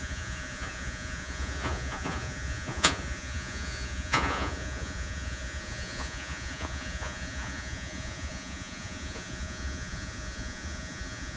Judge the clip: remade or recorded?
remade